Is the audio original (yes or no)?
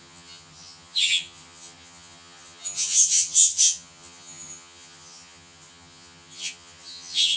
no